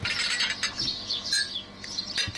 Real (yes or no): yes